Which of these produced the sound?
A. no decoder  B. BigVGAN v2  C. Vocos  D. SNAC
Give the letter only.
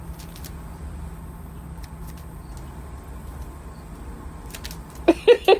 A